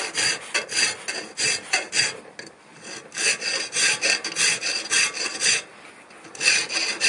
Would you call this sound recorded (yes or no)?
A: yes